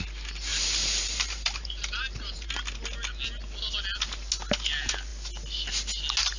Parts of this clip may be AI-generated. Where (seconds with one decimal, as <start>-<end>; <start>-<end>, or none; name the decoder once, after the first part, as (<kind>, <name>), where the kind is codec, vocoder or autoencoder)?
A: 0.5-2.5 (vocoder, BigVGAN v2)